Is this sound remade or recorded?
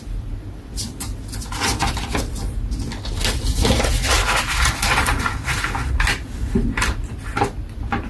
recorded